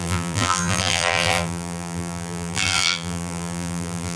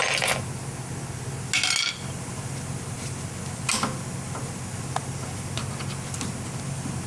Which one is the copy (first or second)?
first